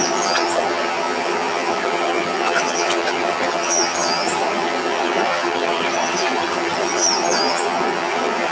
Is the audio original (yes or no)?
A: no